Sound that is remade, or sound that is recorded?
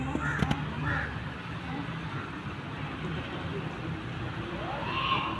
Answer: recorded